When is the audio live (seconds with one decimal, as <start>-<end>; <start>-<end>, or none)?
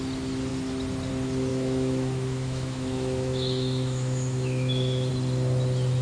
0.0-1.5; 5.1-6.0